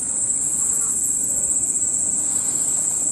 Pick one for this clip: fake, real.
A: fake